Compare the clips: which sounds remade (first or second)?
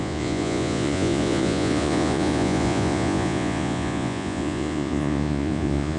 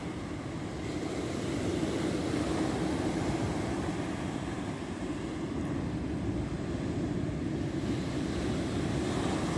first